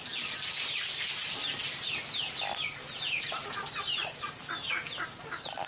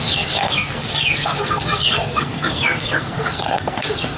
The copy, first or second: second